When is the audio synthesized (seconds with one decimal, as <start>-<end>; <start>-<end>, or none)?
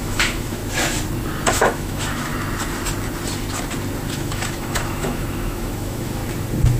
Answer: 0.0-0.6; 1.5-2.3; 4.1-6.2